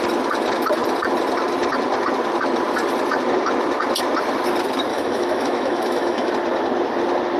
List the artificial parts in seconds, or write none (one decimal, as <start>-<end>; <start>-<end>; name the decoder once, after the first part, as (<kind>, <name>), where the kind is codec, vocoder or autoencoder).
4.9-6.3 (autoencoder, DAC-VAE)